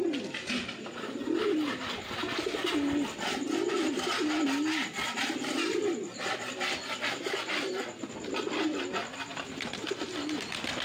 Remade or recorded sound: recorded